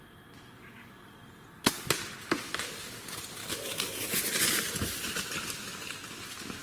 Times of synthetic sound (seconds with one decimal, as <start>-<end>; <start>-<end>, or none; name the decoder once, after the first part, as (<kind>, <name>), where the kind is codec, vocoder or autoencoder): 0.6-1.1 (codec, DAC); 3.4-4.2